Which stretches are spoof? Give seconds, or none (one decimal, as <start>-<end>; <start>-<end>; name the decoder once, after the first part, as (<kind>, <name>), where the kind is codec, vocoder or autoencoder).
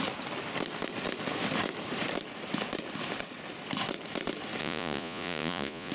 4.6-5.9 (vocoder, Vocos)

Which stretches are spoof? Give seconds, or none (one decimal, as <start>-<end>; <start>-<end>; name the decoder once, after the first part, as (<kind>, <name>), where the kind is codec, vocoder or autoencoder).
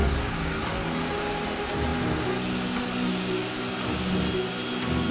0.0-1.1 (codec, DAC)